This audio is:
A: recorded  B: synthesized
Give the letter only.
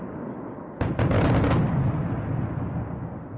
A